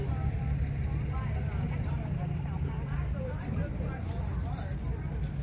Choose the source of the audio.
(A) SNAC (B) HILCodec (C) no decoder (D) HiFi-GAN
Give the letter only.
C